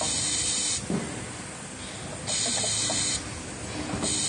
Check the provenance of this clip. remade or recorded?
recorded